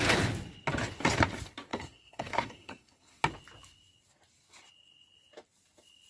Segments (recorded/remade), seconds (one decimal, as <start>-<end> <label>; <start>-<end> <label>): 0.0-1.7 recorded; 1.7-3.2 remade; 3.2-6.1 recorded